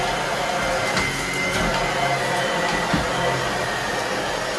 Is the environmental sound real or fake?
real